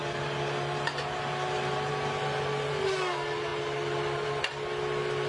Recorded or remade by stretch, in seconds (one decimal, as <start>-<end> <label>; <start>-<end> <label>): 0.0-5.3 recorded